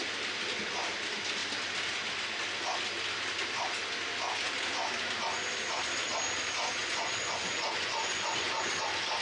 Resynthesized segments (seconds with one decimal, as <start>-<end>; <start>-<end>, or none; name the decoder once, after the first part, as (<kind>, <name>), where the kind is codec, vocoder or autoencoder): 6.8-8.7 (vocoder, Vocos)